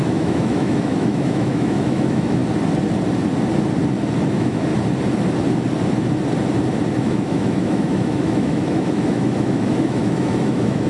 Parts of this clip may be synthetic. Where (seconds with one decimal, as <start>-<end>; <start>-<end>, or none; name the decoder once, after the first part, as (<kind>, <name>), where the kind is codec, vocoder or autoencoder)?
0.0-2.4 (autoencoder, DAC-VAE); 4.3-4.7; 7.0-10.9